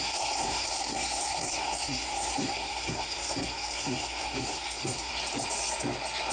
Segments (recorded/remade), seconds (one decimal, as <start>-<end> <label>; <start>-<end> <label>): 0.0-5.1 remade; 5.1-6.3 recorded